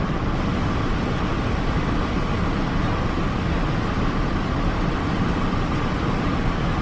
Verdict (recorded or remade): recorded